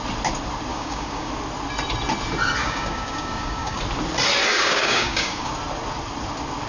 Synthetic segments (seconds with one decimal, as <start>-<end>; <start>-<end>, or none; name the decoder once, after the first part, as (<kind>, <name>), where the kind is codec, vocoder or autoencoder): 0.7-1.3 (codec, DAC); 2.6-3.8; 4.5-5.5